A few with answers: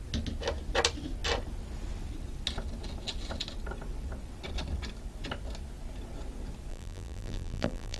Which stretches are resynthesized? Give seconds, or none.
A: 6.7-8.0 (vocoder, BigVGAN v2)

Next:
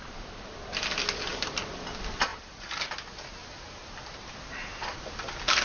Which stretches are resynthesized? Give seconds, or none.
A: 2.3-2.9 (vocoder, BigVGAN v2); 3.4-4.3

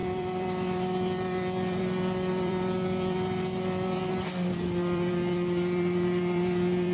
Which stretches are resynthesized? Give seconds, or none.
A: 0.0-6.9 (vocoder, BigVGAN v2)

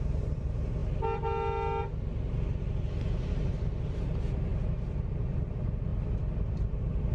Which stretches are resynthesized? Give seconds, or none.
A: 0.0-0.8 (vocoder, BigVGAN v2); 2.6-5.9; 6.5-7.1

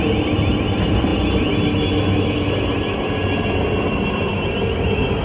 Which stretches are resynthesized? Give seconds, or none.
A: none

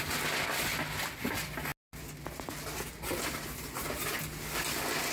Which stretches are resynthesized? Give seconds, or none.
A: none

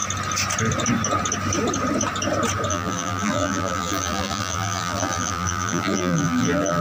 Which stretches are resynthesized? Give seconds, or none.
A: 2.7-6.8 (vocoder, BigVGAN v2)

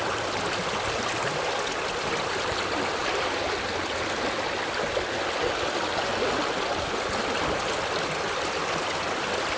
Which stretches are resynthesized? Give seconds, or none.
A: none